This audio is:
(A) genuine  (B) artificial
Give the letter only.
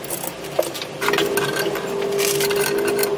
A